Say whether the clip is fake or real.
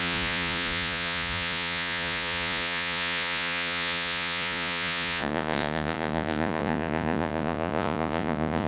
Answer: fake